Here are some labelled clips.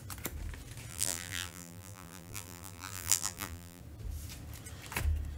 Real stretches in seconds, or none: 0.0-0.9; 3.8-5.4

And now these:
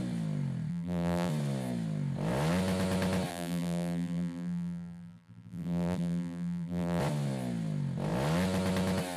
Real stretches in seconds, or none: 0.0-0.7; 1.3-3.3; 7.0-9.2

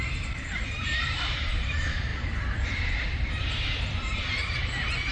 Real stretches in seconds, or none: none

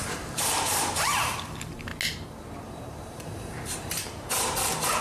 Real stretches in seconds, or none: 1.9-2.6